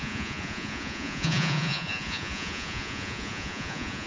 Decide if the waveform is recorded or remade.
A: remade